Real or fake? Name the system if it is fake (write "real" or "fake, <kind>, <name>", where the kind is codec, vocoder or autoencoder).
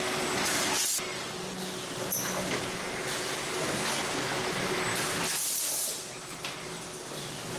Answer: real